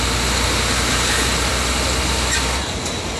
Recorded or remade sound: recorded